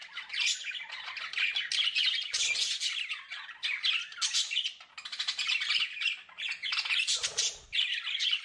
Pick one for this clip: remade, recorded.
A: recorded